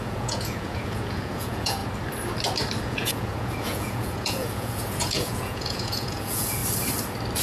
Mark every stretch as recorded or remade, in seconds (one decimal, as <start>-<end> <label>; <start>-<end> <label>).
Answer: 0.0-1.8 remade; 1.8-2.8 recorded; 2.8-6.6 remade; 6.6-7.4 recorded